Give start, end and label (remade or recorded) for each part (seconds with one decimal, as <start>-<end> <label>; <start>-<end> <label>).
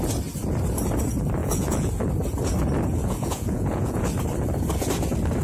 0.0-1.4 recorded; 1.4-1.9 remade; 1.9-3.0 recorded; 3.0-4.0 remade; 4.0-5.4 recorded